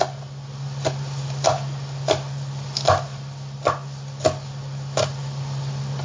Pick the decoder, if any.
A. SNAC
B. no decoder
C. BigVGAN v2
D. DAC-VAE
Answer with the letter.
B